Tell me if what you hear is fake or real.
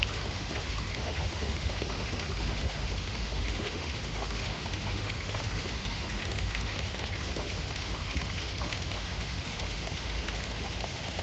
fake